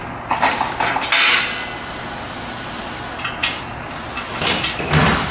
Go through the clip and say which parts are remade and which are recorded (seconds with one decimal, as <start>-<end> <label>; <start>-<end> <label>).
0.0-5.3 recorded